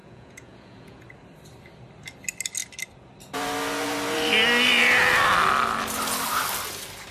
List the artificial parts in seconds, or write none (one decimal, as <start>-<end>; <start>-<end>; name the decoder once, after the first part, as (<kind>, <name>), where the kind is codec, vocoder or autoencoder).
0.0-1.0 (vocoder, Vocos)